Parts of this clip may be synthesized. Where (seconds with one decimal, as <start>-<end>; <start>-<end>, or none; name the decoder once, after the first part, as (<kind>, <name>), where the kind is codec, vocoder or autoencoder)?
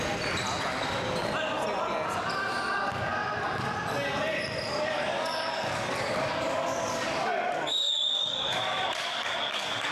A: 4.7-9.9 (codec, DAC)